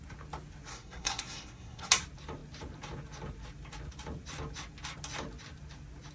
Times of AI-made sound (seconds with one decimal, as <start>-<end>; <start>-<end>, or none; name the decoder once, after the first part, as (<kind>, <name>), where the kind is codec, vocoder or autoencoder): 0.7-1.9 (codec, SNAC)